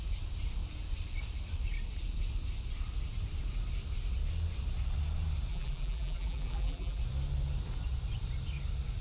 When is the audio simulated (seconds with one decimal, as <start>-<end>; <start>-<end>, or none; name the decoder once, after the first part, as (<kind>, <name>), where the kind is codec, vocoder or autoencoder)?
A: 5.5-7.0 (vocoder, BigVGAN v2)